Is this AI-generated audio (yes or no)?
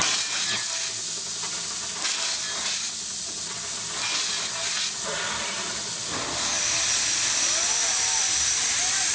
no